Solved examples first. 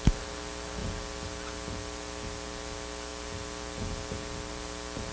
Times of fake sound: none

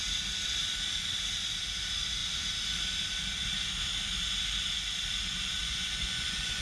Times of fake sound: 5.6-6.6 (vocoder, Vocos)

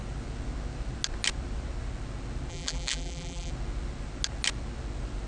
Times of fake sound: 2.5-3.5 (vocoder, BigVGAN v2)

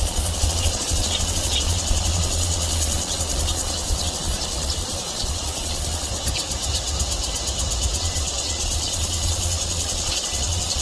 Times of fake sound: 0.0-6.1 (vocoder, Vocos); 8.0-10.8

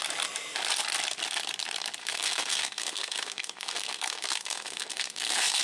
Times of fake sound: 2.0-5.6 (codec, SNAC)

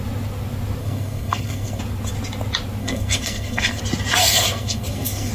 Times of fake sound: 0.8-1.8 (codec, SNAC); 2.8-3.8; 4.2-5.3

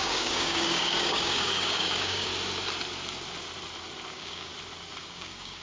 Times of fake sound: 0.0-2.3 (codec, DAC); 4.1-4.5; 5.0-5.6

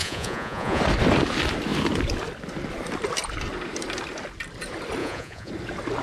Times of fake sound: 0.0-0.8 (vocoder, Vocos); 5.0-5.5